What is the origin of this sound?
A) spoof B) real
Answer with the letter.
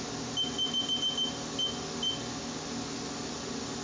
B